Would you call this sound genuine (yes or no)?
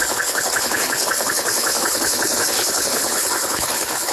no